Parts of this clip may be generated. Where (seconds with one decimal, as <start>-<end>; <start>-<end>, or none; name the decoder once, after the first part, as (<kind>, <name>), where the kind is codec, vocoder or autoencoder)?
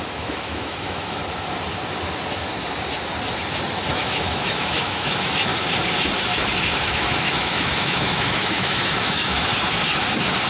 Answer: 0.0-1.2 (autoencoder, DAC-VAE); 3.9-5.5; 6.8-9.5